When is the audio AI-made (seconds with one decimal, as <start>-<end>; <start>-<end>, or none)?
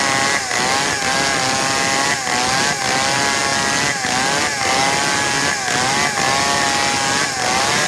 none